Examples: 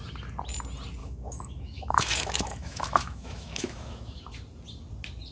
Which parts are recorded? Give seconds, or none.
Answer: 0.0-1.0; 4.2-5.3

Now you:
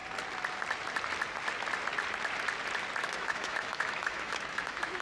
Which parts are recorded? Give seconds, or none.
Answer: 0.0-3.0